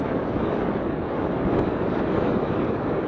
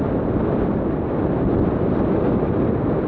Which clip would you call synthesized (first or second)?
first